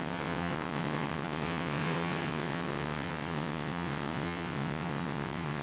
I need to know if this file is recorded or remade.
remade